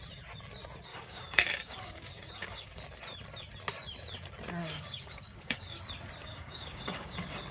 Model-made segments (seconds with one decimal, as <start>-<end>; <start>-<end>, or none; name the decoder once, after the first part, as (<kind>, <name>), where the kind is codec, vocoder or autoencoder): 0.9-2.8 (codec, DAC); 4.6-5.8; 6.2-7.5